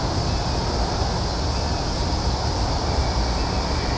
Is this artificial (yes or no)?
no